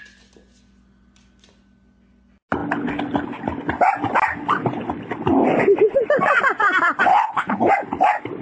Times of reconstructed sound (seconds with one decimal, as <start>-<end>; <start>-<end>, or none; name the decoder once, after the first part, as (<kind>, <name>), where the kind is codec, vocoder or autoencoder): 7.1-7.7 (codec, HILCodec)